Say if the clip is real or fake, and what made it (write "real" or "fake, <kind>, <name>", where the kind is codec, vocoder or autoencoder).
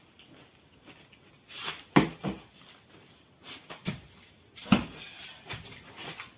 real